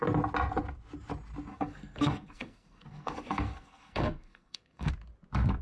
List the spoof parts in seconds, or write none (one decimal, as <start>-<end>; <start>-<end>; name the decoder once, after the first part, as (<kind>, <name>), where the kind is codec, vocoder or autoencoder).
1.5-4.9 (codec, SNAC)